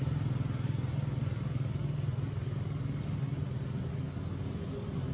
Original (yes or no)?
yes